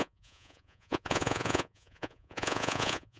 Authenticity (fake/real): fake